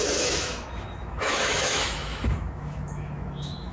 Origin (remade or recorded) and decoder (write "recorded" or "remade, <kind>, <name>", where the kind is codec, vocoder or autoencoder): remade, autoencoder, DAC-VAE